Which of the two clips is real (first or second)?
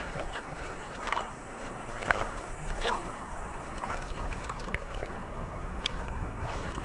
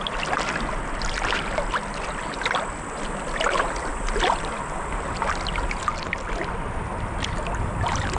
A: second